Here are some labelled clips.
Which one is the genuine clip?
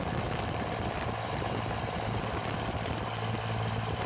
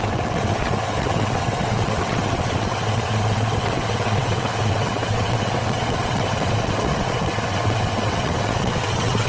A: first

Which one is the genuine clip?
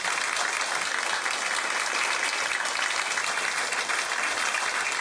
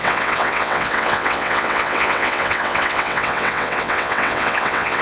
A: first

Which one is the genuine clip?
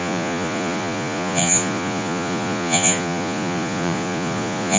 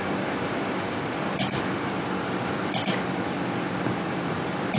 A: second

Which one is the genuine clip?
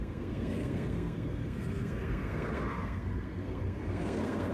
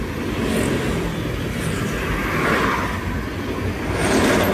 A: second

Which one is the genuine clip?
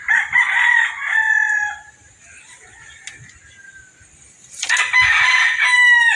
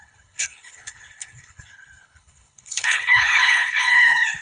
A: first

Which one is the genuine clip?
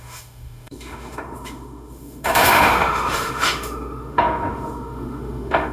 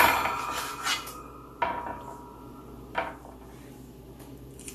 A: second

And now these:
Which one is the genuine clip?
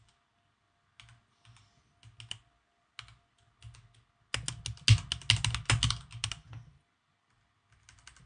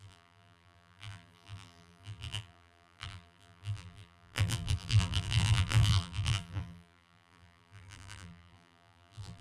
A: first